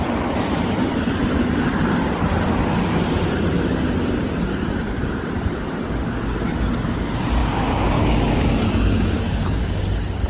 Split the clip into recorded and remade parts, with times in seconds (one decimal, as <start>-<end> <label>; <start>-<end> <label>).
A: 0.0-7.4 recorded; 7.4-9.8 remade; 9.8-10.3 recorded